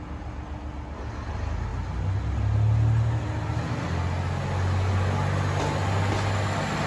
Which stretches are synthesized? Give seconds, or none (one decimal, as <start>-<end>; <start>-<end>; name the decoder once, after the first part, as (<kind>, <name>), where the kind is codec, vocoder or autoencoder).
none